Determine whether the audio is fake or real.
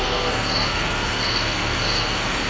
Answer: fake